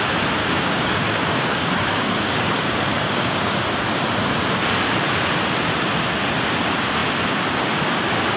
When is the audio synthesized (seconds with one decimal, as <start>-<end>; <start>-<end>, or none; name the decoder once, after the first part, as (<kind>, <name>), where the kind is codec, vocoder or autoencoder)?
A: 0.4-3.6 (codec, DAC)